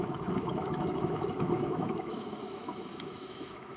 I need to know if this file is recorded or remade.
remade